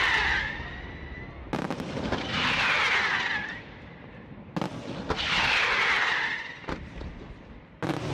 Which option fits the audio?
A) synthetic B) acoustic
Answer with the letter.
B